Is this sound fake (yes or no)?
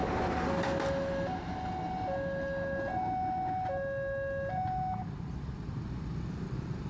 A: no